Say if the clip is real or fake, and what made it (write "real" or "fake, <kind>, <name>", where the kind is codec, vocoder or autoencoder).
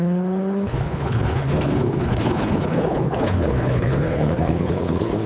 fake, codec, HILCodec